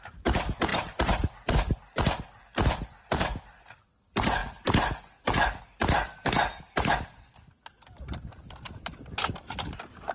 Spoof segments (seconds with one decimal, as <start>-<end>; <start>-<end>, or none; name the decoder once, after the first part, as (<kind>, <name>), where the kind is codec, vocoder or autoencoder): 0.0-0.7 (vocoder, BigVGAN v2); 1.5-4.4; 5.6-10.1